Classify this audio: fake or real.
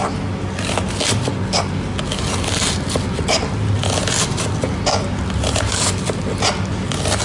real